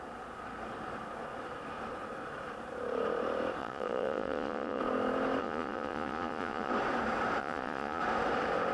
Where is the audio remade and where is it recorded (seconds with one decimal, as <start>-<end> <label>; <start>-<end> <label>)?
0.0-3.6 recorded; 3.6-4.8 remade; 4.8-5.4 recorded; 5.4-6.7 remade; 6.7-7.4 recorded; 7.4-8.0 remade; 8.0-8.7 recorded

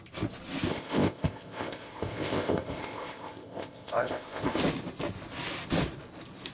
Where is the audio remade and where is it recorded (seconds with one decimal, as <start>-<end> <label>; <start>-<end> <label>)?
0.0-0.7 recorded; 0.7-4.6 remade; 4.6-6.5 recorded

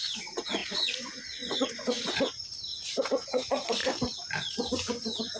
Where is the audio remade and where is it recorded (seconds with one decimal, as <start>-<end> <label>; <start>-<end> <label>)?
0.0-3.8 remade; 3.8-5.4 recorded

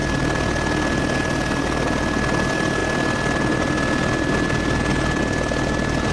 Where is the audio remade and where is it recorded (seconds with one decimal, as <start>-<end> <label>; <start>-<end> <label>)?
0.0-6.1 recorded

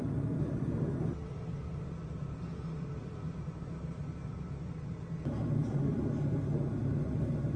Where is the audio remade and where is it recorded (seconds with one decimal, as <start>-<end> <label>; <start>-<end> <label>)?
0.0-7.6 recorded

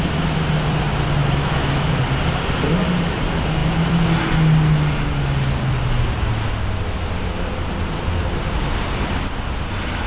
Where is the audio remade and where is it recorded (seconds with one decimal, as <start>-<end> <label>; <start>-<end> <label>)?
0.0-1.2 recorded; 1.2-2.0 remade; 2.0-10.1 recorded